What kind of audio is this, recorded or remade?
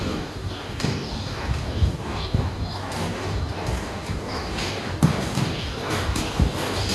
remade